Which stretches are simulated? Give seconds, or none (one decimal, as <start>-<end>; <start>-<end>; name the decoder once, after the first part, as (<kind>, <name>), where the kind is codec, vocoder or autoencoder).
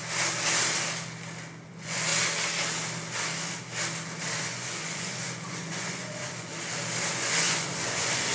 1.7-2.1 (vocoder, Vocos); 4.4-6.5; 7.1-8.3